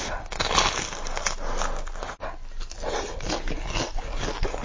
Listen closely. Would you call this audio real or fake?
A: real